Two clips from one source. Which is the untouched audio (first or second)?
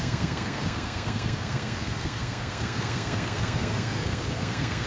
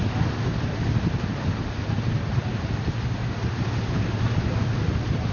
second